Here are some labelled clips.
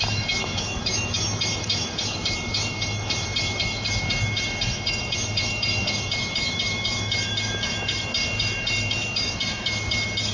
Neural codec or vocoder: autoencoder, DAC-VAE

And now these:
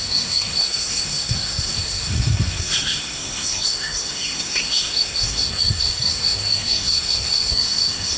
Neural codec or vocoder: codec, SNAC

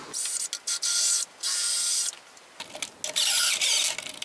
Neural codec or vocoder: none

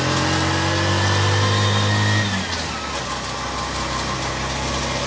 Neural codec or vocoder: none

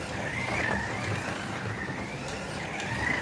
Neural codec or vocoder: none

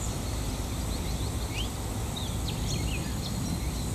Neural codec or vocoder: none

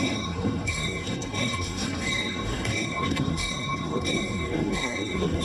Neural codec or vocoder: codec, SNAC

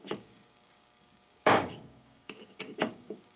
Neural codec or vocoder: codec, DAC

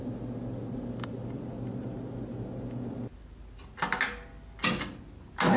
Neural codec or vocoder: none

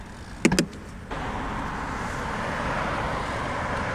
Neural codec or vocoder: none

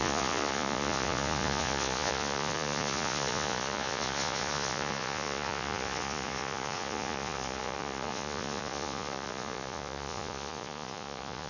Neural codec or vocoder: vocoder, Vocos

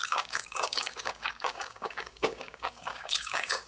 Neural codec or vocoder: codec, DAC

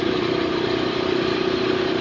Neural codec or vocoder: vocoder, BigVGAN v2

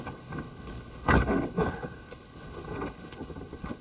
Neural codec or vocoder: codec, HILCodec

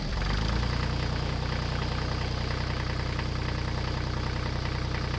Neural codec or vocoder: none